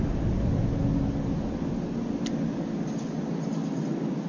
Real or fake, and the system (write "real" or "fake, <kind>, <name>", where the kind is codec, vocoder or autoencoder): real